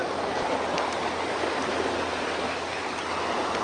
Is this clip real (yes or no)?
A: yes